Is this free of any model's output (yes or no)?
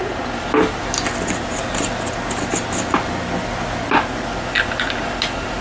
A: yes